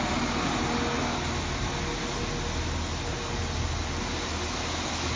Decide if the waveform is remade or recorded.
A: recorded